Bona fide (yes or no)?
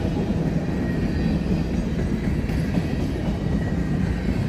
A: yes